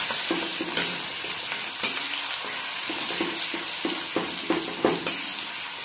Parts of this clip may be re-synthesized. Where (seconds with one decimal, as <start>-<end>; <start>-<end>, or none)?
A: 0.5-1.8